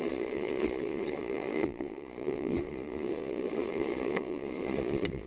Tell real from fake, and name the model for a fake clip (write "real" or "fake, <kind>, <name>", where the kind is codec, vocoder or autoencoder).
fake, vocoder, Vocos